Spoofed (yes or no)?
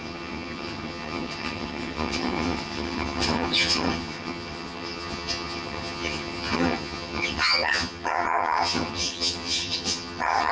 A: yes